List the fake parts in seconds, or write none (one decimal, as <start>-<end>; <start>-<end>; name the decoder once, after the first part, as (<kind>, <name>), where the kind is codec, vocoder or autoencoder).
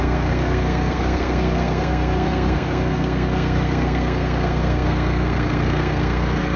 0.0-6.6 (codec, SNAC)